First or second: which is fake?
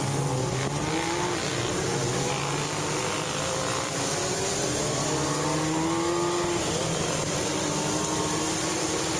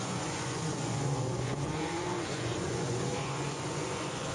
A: second